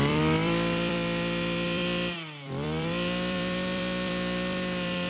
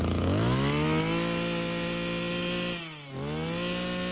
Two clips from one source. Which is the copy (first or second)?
first